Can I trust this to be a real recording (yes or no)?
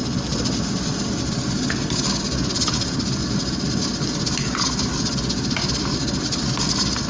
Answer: yes